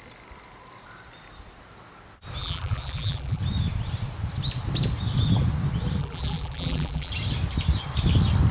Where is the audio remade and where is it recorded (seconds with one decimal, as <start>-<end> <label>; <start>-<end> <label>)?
0.0-2.4 recorded; 2.4-3.4 remade; 3.4-6.0 recorded; 6.0-7.1 remade; 7.1-8.5 recorded